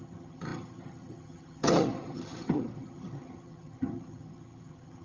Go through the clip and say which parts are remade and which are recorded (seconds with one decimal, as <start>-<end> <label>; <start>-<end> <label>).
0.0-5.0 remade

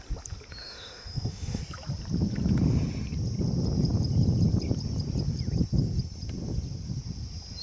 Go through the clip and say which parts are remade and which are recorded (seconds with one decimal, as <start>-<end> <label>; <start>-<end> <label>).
0.0-0.6 recorded; 0.6-1.6 remade; 1.6-7.6 recorded

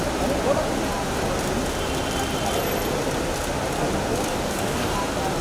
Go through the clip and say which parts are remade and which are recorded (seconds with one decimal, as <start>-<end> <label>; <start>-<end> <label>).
0.0-4.1 recorded; 4.1-4.9 remade; 4.9-5.4 recorded